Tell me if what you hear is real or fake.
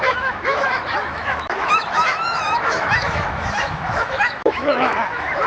fake